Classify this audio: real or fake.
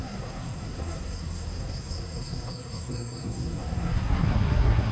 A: fake